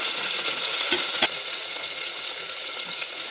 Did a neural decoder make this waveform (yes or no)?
yes